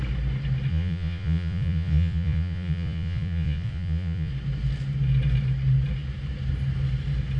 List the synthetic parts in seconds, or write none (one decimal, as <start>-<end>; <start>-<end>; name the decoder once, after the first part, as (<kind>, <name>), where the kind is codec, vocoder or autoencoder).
0.7-4.3 (vocoder, Vocos)